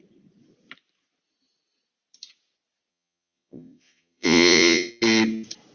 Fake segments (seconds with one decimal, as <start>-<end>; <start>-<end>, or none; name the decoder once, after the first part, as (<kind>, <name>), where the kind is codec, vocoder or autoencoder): 2.9-4.9 (vocoder, Vocos)